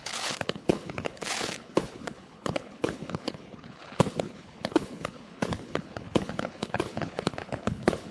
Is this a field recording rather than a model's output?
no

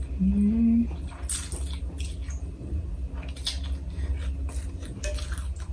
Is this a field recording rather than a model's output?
yes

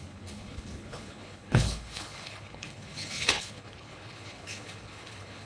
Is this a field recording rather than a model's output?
no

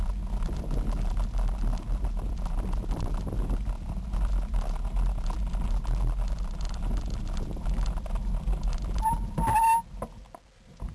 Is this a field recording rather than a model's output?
yes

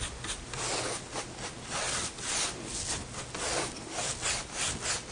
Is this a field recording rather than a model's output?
yes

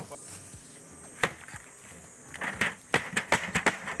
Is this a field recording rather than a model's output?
yes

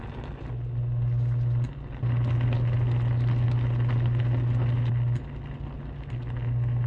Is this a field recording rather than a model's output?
yes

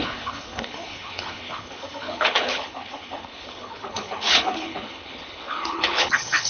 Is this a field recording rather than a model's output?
no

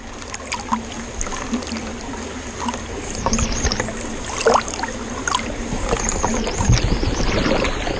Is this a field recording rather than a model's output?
yes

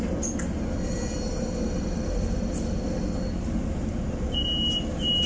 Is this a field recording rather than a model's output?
yes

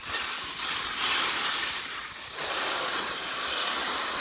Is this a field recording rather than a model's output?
yes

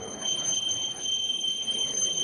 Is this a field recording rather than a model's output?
no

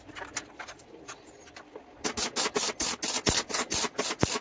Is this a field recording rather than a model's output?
yes